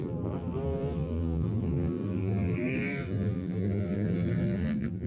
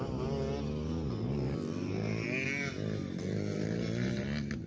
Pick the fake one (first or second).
first